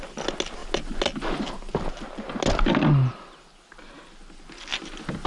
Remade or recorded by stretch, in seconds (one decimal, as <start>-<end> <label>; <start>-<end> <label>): 0.0-5.3 recorded